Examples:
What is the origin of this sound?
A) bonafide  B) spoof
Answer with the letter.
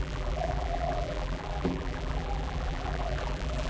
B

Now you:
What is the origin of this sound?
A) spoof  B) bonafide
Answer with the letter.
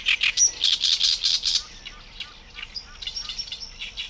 B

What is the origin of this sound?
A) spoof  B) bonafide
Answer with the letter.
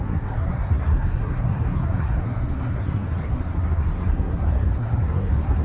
A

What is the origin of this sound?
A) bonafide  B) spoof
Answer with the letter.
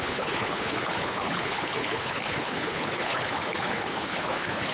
B